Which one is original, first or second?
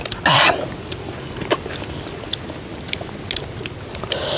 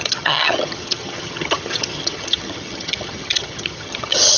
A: first